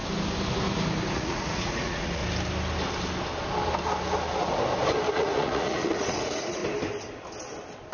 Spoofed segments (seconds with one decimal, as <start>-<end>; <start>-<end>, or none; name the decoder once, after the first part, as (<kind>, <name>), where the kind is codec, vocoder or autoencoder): 1.1-2.2 (vocoder, Vocos); 5.1-6.6